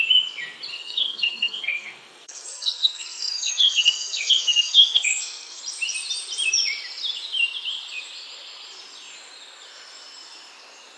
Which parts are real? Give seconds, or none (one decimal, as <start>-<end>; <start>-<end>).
0.0-0.7; 5.6-11.0